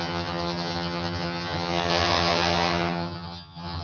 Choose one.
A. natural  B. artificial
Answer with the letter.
B